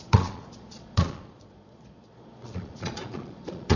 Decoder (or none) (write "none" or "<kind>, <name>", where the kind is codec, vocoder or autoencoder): vocoder, Vocos